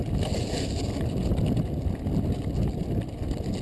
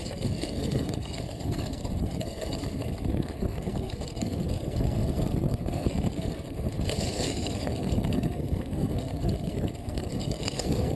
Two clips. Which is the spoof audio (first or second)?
second